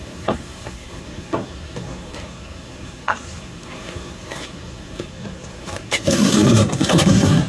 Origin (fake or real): fake